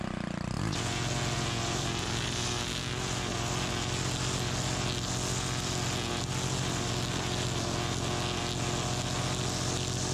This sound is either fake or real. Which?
real